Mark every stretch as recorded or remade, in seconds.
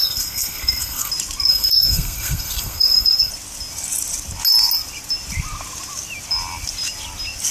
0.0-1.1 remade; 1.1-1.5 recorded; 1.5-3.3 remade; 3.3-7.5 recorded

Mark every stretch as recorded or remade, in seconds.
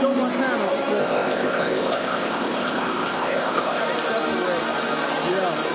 0.0-1.0 recorded; 1.0-3.8 remade; 3.8-5.7 recorded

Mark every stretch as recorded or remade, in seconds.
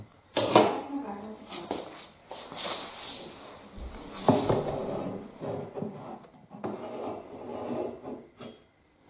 0.0-9.1 recorded